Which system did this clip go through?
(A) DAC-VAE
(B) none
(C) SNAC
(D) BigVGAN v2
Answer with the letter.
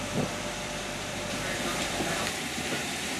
D